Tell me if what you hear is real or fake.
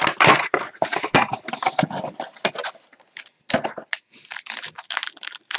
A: real